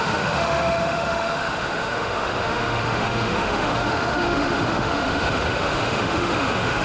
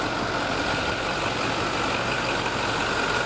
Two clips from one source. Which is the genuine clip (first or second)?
second